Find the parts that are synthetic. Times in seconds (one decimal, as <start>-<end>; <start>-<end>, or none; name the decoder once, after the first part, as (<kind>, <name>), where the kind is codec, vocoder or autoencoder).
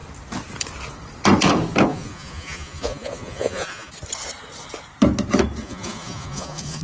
1.9-3.9 (vocoder, Vocos); 5.6-6.8